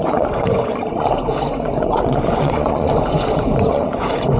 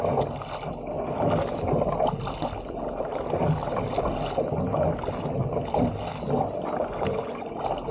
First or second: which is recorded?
second